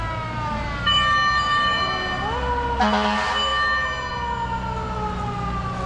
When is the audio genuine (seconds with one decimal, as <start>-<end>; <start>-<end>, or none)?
0.0-5.9